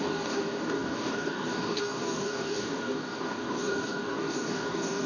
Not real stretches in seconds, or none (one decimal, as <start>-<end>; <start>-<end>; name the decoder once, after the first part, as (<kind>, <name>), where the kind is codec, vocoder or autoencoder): 0.0-5.1 (codec, DAC)